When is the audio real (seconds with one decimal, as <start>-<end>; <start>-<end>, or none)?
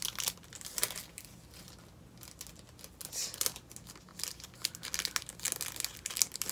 0.0-6.5